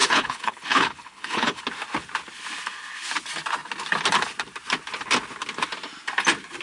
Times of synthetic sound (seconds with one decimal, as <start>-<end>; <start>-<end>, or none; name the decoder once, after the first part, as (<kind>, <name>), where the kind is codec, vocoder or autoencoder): 0.0-1.6 (codec, HILCodec)